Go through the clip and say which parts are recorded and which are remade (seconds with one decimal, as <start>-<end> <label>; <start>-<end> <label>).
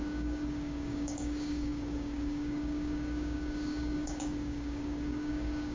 0.0-5.7 remade